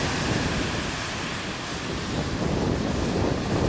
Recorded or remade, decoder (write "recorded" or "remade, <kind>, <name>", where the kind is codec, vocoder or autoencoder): recorded